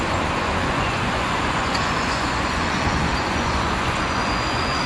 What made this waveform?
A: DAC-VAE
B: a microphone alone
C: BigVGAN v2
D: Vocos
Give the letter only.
D